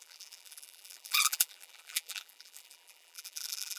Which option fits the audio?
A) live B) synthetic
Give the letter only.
B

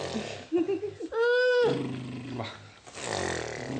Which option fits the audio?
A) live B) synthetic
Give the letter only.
A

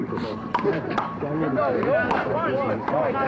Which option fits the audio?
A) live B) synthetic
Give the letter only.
A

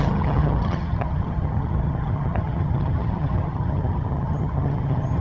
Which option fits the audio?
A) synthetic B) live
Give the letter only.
A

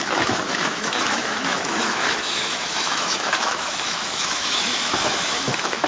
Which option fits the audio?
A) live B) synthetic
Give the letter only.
B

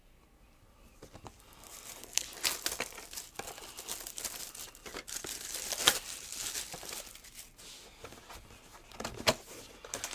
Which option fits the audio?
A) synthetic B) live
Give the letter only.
B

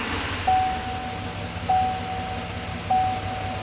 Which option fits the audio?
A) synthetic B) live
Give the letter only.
B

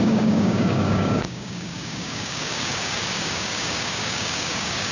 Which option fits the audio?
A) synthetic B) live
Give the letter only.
A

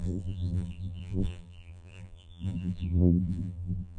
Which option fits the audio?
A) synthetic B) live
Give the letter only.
A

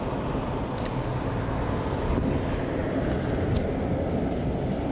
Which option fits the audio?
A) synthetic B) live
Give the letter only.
B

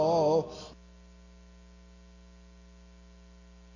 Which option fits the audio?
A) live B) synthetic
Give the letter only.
A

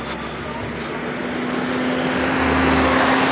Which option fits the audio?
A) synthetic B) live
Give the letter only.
B